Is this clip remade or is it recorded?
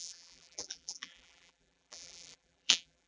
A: remade